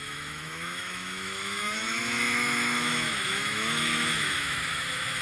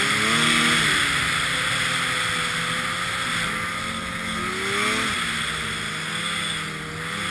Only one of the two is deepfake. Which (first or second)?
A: first